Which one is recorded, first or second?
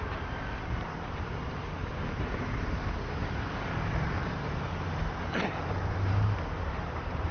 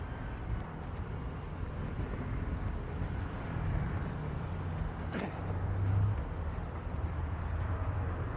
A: second